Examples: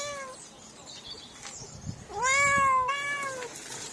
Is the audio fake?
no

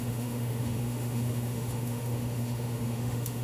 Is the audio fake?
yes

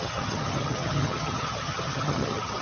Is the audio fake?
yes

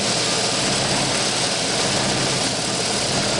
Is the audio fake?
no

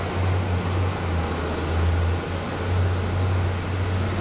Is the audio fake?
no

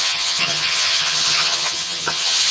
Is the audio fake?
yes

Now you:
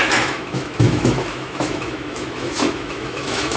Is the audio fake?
yes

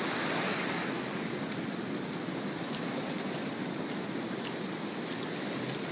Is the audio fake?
no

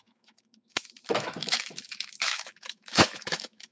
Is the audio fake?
yes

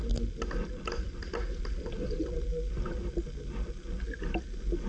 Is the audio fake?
no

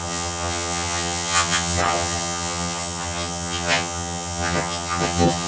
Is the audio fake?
yes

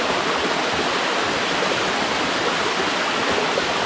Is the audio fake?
no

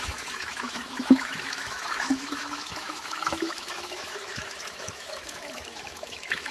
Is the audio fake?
yes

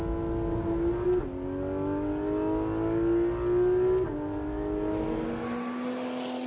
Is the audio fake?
no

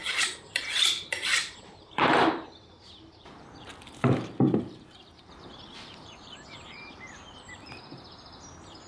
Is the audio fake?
yes